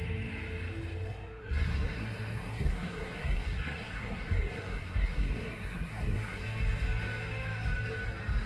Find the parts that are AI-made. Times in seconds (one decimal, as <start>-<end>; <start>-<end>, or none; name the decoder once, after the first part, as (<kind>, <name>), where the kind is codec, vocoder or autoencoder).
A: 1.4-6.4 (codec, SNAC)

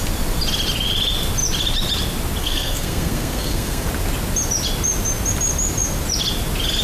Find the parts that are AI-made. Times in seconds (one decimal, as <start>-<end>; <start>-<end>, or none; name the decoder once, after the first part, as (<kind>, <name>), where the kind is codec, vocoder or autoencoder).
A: 2.4-3.9 (codec, SNAC)

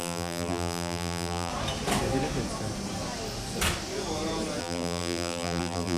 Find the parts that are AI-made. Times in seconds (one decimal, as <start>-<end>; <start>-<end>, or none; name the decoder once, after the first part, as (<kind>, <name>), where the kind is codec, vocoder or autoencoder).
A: 0.0-1.5 (vocoder, BigVGAN v2); 4.6-6.0

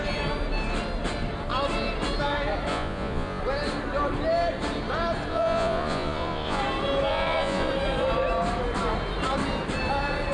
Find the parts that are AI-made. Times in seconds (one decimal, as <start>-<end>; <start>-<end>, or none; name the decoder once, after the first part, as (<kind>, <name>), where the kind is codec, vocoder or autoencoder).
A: 2.7-3.4 (vocoder, Vocos); 5.3-6.6; 7.1-7.7

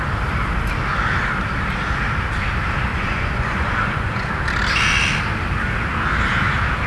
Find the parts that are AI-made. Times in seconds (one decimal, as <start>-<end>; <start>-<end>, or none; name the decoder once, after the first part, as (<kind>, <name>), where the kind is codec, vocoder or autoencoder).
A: 2.9-4.3 (vocoder, Vocos)